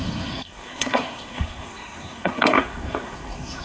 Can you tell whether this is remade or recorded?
remade